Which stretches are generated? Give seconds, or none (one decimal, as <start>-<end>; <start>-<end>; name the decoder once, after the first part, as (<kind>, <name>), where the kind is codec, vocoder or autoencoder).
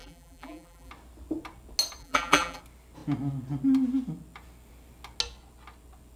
0.0-0.9 (vocoder, BigVGAN v2); 2.0-2.6